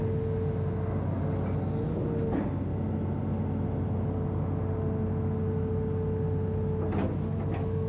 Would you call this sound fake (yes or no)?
no